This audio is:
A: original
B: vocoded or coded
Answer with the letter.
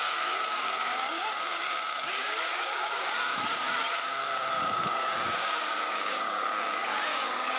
B